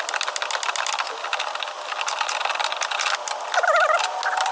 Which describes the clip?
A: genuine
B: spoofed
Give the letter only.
A